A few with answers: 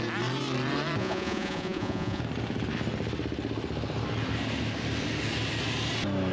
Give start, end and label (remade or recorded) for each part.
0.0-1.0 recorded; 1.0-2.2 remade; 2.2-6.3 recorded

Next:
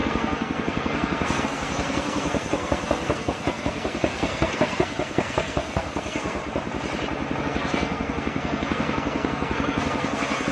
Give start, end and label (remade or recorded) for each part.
0.0-6.4 remade; 6.4-7.4 recorded; 7.4-10.5 remade

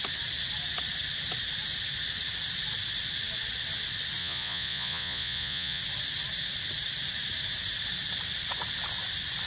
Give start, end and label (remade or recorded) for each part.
0.0-4.2 recorded; 4.2-5.8 remade; 5.8-9.5 recorded

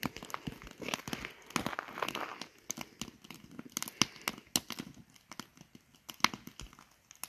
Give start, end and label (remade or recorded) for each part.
0.0-7.3 recorded